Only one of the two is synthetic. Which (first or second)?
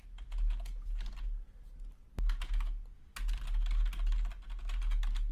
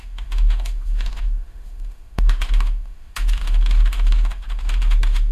second